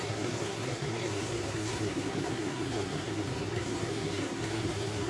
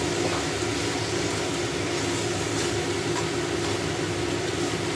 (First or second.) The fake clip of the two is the first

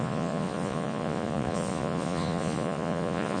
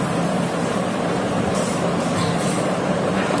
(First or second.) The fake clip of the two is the first